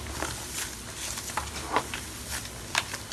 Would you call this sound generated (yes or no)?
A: no